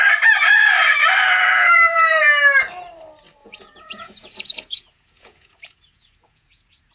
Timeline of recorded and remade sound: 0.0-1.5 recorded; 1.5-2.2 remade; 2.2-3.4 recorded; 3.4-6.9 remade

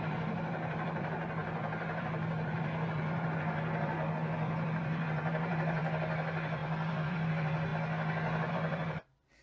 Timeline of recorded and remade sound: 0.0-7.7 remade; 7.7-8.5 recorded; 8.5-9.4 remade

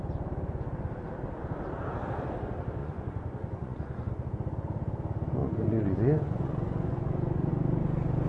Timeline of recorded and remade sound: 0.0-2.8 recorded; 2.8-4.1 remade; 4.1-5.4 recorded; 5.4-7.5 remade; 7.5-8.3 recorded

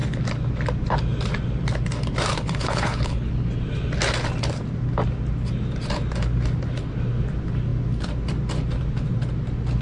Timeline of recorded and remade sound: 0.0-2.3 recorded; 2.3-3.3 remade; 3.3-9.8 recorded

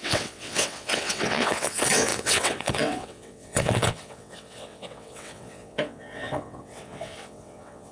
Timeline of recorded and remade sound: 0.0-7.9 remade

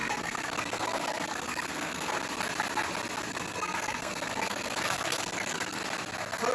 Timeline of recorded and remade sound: 0.0-2.2 remade; 2.2-3.3 recorded; 3.3-5.8 remade; 5.8-6.5 recorded